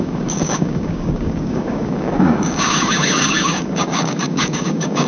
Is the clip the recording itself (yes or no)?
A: no